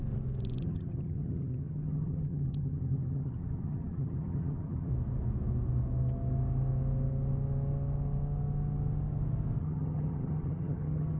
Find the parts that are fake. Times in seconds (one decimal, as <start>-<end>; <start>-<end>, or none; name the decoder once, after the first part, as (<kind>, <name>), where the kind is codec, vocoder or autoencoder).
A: 0.6-4.9 (vocoder, HiFi-GAN); 9.6-11.2